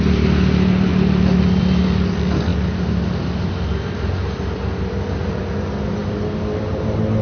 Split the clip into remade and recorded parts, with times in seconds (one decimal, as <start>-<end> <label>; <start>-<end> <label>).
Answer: 0.0-7.2 recorded

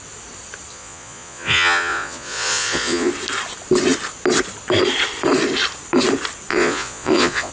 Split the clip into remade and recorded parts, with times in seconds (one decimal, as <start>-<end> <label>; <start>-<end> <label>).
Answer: 0.0-0.7 recorded; 0.7-3.1 remade; 3.1-6.5 recorded; 6.5-7.5 remade

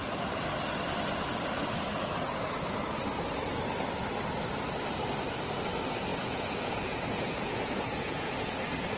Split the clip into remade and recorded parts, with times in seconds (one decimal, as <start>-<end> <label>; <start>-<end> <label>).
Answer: 0.0-6.1 recorded; 6.1-8.6 remade; 8.6-9.0 recorded

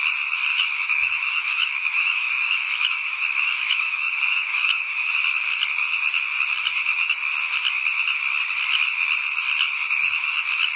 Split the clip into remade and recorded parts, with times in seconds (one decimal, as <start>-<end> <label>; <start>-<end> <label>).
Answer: 0.0-0.5 recorded; 0.5-5.1 remade; 5.1-10.8 recorded

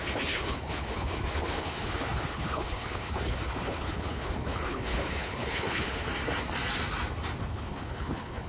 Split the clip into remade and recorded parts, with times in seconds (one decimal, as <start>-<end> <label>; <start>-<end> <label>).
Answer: 0.0-6.1 remade; 6.1-7.4 recorded; 7.4-8.5 remade

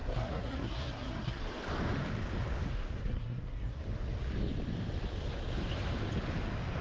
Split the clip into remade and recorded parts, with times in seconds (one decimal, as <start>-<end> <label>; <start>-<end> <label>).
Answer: 0.0-1.4 remade; 1.4-3.0 recorded; 3.0-3.8 remade; 3.8-6.8 recorded

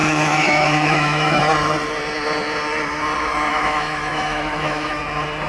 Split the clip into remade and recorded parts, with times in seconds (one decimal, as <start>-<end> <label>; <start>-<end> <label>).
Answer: 0.0-1.4 remade; 1.4-3.5 recorded; 3.5-5.0 remade; 5.0-5.5 recorded